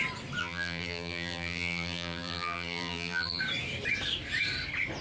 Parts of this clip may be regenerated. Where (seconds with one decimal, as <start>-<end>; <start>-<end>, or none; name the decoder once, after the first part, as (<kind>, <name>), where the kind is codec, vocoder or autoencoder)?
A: 0.4-3.4 (vocoder, BigVGAN v2)